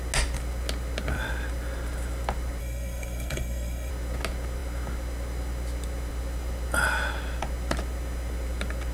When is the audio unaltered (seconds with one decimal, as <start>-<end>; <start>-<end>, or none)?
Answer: 0.0-2.6; 3.9-8.9